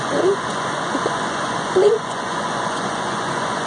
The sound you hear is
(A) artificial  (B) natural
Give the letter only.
A